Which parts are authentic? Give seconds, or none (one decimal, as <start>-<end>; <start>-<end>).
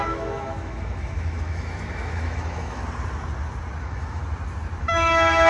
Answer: 2.8-3.8; 4.2-4.8